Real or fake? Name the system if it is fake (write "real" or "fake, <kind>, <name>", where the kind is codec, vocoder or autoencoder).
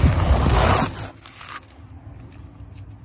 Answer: real